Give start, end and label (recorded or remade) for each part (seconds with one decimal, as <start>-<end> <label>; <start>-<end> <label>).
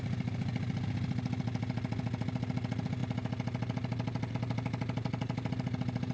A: 0.0-6.1 recorded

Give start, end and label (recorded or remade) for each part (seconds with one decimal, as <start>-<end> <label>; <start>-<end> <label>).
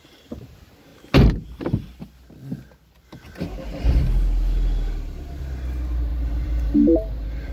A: 0.0-6.1 recorded; 6.1-7.5 remade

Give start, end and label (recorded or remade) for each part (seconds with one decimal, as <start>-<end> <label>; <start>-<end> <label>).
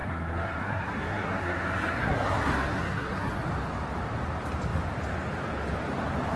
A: 0.0-3.3 remade; 3.3-6.4 recorded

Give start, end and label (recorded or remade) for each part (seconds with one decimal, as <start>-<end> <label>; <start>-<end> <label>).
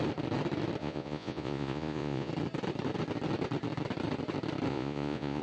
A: 0.0-0.8 recorded; 0.8-2.3 remade; 2.3-4.7 recorded; 4.7-5.4 remade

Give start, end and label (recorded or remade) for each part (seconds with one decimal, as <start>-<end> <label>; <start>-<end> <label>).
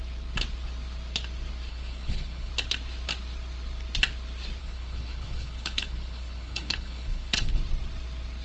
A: 0.0-1.7 recorded; 1.7-2.5 remade; 2.5-4.6 recorded; 4.6-7.6 remade; 7.6-8.4 recorded